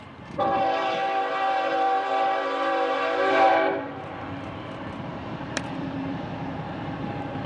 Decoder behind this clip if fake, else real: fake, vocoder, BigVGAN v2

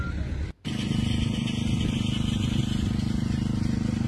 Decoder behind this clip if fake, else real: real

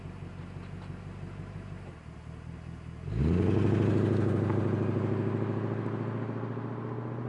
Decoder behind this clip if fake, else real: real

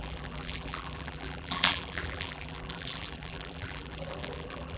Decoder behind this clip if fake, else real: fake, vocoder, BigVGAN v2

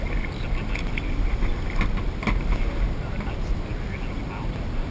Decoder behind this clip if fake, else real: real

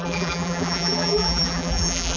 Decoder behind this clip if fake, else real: fake, vocoder, BigVGAN v2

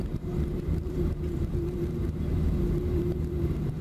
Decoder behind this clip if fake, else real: fake, vocoder, BigVGAN v2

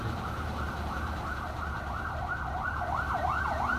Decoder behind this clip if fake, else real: fake, vocoder, BigVGAN v2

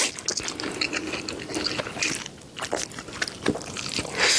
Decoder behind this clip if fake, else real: real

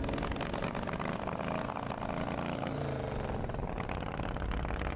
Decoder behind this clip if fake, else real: real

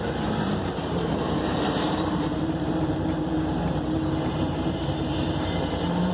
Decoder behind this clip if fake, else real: fake, vocoder, BigVGAN v2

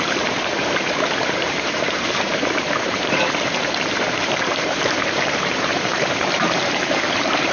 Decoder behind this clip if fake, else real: fake, vocoder, BigVGAN v2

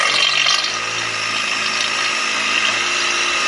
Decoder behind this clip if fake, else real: real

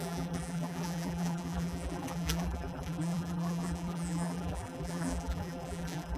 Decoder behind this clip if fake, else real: fake, vocoder, BigVGAN v2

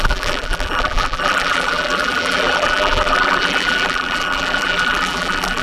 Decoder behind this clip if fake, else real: fake, vocoder, BigVGAN v2